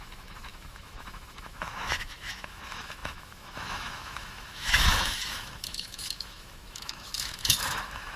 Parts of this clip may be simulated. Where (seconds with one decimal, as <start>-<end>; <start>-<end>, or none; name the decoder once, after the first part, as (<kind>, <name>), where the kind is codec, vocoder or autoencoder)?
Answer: 0.0-8.2 (autoencoder, DAC-VAE)